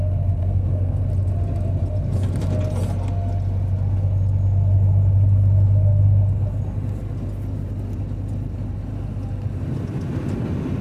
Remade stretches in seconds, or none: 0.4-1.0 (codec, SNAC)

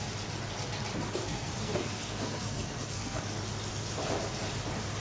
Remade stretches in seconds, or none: 1.2-3.2 (codec, SNAC)

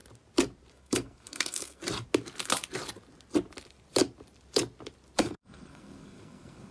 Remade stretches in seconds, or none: 0.7-1.8 (codec, SNAC); 5.2-6.7

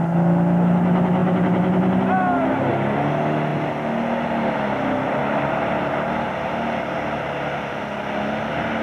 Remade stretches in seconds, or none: none

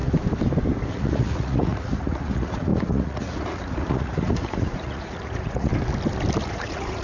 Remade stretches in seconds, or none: 0.9-5.7 (vocoder, Vocos); 6.4-7.0

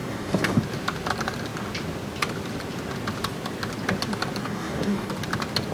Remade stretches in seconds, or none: 0.0-0.6 (codec, DAC); 4.4-5.1

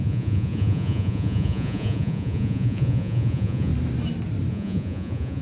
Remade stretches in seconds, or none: 0.0-3.7 (vocoder, Vocos); 4.5-5.4

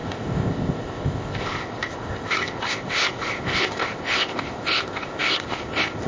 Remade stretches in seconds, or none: 0.0-6.1 (codec, ZipCodec)